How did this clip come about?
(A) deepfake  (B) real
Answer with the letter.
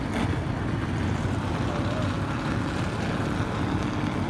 B